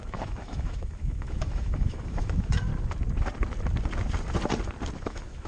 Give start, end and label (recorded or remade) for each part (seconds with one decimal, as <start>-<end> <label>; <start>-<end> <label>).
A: 0.0-2.7 remade; 2.7-4.9 recorded; 4.9-5.5 remade